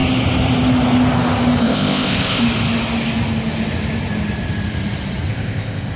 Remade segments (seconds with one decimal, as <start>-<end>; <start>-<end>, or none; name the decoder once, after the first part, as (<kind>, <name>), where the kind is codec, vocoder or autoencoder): 1.6-2.4 (codec, ZipCodec); 5.3-6.0